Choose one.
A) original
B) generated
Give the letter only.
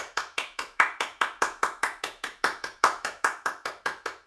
B